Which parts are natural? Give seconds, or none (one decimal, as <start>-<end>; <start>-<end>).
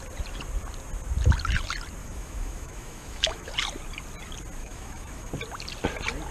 0.0-2.0; 3.5-4.6; 5.3-6.3